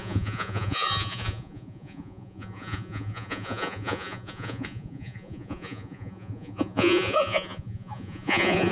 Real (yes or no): no